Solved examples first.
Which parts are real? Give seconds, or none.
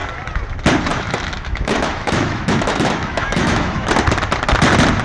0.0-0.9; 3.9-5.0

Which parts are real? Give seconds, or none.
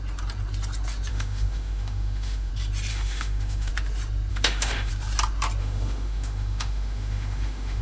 0.0-1.1; 2.5-2.9; 3.7-4.3; 4.9-5.6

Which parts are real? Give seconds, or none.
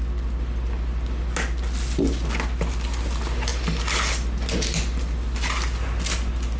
0.0-6.6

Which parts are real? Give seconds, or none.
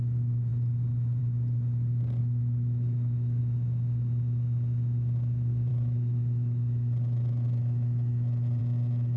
0.0-2.2; 3.4-5.7; 8.6-9.2